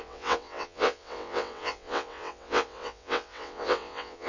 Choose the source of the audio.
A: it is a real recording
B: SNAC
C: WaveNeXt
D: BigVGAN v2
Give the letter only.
C